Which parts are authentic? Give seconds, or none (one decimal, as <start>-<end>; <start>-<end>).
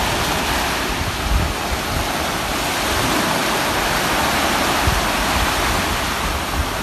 0.0-6.8